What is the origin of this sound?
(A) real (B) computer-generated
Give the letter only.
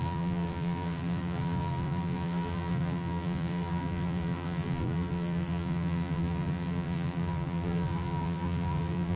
B